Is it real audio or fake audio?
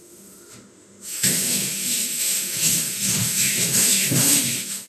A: fake